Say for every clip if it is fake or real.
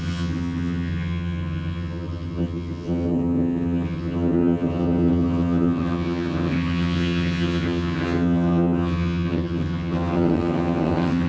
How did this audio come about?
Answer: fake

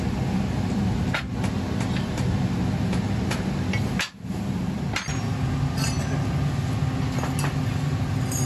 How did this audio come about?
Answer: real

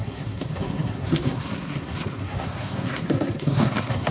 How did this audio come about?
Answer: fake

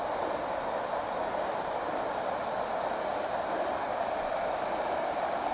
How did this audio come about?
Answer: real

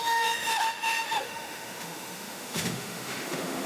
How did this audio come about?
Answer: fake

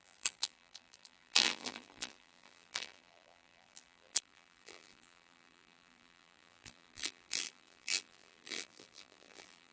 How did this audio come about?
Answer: fake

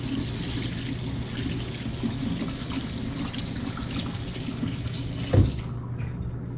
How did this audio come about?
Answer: real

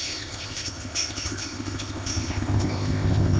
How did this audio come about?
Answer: fake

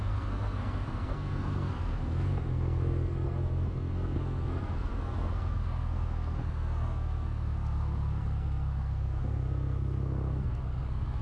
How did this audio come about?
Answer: fake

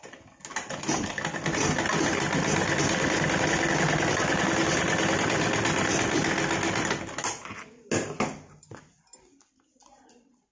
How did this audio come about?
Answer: real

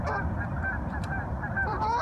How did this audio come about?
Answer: fake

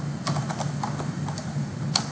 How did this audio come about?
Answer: real